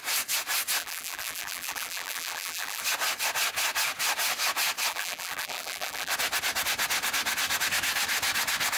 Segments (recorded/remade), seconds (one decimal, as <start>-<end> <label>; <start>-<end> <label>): 0.0-0.8 recorded; 0.8-2.8 remade; 2.8-4.9 recorded; 4.9-6.1 remade; 6.1-8.8 recorded